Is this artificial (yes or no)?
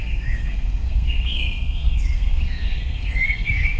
yes